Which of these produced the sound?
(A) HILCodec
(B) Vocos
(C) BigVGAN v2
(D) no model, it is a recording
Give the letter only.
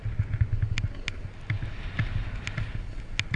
D